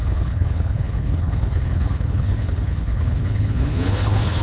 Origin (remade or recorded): remade